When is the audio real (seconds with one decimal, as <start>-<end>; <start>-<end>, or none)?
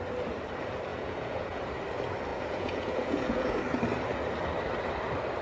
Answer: 0.0-0.9; 1.6-2.3; 3.6-5.4